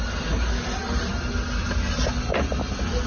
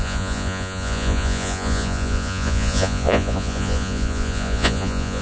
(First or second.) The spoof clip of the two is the second